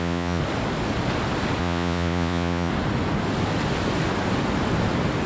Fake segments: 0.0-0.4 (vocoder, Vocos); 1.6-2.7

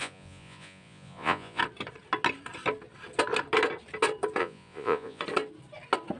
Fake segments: 0.0-1.6 (vocoder, Vocos); 4.4-5.2

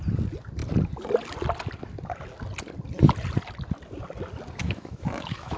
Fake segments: 4.6-5.6 (autoencoder, DAC-VAE)

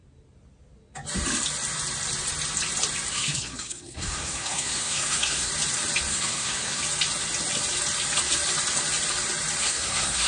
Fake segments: 3.1-5.5 (codec, SNAC); 6.1-6.8; 9.6-10.3